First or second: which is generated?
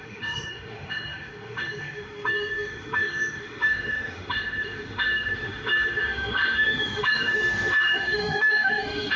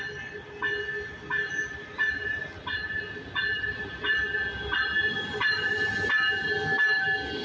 first